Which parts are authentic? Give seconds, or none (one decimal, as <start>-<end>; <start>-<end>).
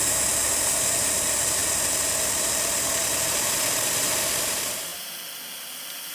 4.9-5.5